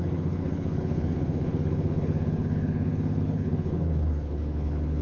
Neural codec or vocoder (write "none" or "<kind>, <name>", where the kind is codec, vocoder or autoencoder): codec, HILCodec